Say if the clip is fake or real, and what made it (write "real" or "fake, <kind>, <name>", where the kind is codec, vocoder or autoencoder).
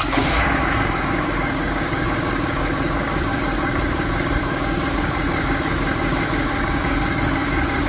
fake, codec, DAC